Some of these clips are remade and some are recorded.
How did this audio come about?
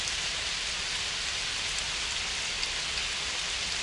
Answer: recorded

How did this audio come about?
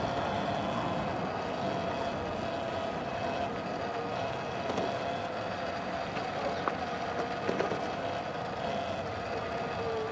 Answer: recorded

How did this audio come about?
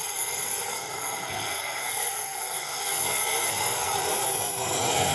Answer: remade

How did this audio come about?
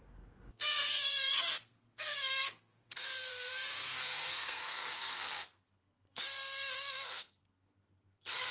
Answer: remade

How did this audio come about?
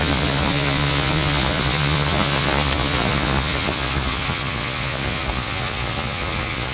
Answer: remade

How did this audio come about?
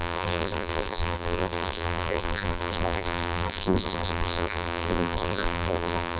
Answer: remade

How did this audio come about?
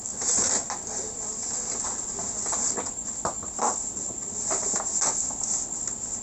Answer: recorded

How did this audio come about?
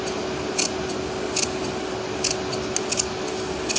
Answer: recorded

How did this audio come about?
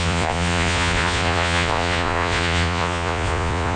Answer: remade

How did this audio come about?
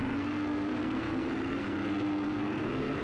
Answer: remade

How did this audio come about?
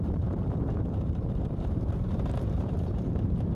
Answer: remade